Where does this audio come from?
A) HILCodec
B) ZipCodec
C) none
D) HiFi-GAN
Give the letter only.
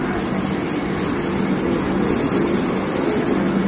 C